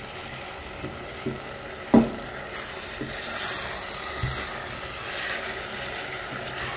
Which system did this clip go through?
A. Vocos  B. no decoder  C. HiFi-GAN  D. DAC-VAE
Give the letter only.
B